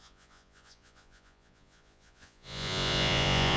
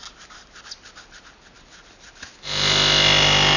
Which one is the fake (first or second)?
first